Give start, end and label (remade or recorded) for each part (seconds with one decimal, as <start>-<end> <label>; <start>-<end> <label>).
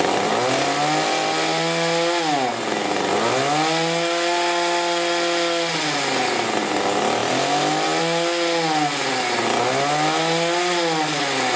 0.0-11.6 recorded